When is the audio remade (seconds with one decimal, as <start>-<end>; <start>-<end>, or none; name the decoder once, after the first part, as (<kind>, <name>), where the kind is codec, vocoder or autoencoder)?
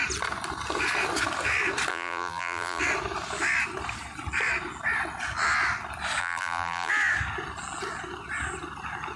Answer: 1.9-2.8 (vocoder, BigVGAN v2); 6.2-6.9